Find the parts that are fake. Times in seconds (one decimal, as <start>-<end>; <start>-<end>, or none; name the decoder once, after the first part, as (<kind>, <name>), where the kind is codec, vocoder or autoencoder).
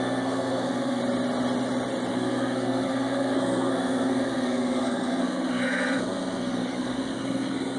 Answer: 0.0-1.0 (codec, SNAC); 2.1-7.8